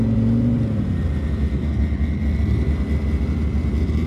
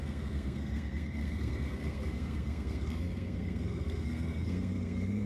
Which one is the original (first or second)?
first